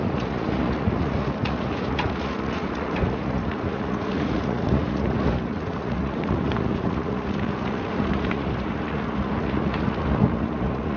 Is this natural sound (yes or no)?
no